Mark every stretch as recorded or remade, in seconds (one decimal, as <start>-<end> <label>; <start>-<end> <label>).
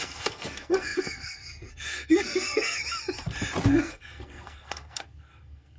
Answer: 0.0-2.8 remade; 2.8-3.7 recorded; 3.7-5.8 remade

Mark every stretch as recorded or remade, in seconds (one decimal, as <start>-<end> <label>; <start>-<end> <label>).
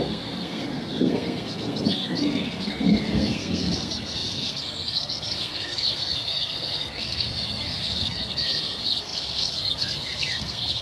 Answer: 0.0-10.8 remade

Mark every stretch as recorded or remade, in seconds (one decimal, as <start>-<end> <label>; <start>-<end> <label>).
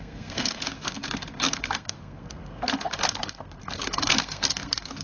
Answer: 0.0-5.0 remade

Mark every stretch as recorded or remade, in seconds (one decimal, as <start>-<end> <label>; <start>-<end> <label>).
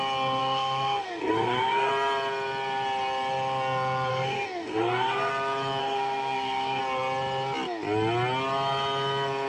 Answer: 0.0-0.4 recorded; 0.4-1.9 remade; 1.9-4.1 recorded; 4.1-5.3 remade; 5.3-5.8 recorded; 5.8-6.8 remade; 6.8-9.5 recorded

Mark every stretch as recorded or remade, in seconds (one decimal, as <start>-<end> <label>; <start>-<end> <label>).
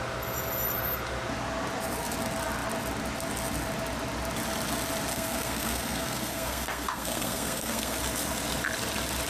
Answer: 0.0-5.1 recorded; 5.1-8.0 remade; 8.0-9.3 recorded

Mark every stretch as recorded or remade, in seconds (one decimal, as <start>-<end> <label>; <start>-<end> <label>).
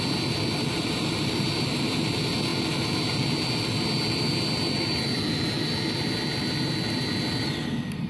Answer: 0.0-8.1 recorded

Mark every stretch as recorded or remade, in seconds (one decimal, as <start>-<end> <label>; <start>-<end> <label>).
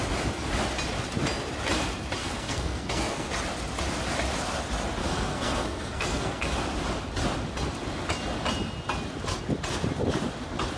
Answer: 0.0-2.2 recorded; 2.2-3.3 remade; 3.3-5.0 recorded; 5.0-6.5 remade; 6.5-10.8 recorded